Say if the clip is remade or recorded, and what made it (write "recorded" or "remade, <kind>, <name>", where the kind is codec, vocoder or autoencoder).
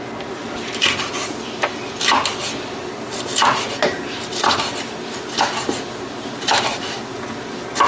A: recorded